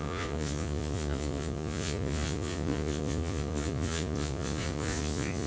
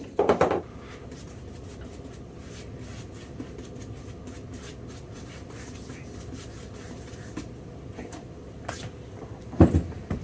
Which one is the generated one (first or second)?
first